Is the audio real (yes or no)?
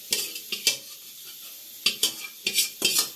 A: yes